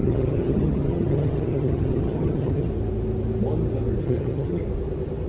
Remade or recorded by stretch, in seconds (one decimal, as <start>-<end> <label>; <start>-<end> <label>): 0.0-2.7 remade; 2.7-4.0 recorded; 4.0-4.6 remade; 4.6-5.3 recorded